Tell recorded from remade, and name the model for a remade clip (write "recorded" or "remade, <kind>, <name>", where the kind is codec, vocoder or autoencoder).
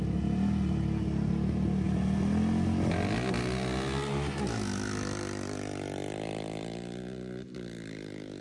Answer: recorded